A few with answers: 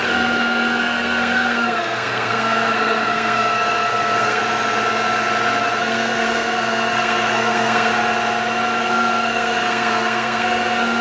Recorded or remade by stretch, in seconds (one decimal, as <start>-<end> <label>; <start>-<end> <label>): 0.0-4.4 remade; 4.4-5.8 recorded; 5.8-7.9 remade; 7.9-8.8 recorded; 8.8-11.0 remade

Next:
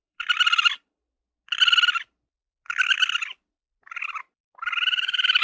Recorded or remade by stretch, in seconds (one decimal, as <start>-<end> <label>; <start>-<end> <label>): 0.0-1.0 remade; 1.0-4.2 recorded; 4.2-5.4 remade

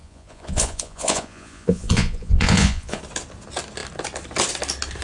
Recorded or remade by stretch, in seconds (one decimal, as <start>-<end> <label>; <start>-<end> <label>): 0.0-3.0 remade; 3.0-5.0 recorded

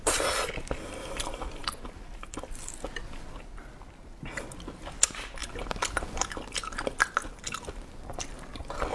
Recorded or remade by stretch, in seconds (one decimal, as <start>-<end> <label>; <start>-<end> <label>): 0.0-8.9 recorded

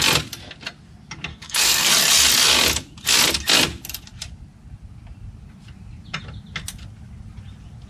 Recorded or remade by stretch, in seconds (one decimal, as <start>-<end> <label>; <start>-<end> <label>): 0.0-1.3 recorded; 1.3-1.9 remade; 1.9-7.9 recorded

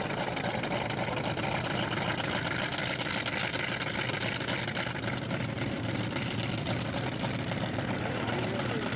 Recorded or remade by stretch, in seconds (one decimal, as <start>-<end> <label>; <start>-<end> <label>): 0.0-9.0 recorded